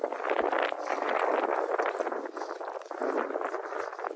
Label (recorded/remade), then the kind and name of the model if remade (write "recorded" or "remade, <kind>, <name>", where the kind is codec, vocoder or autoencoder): recorded